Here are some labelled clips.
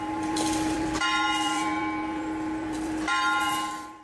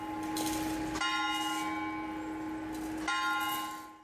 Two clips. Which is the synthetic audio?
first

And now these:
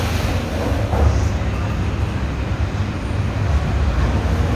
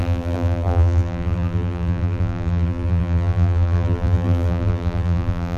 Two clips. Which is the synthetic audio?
second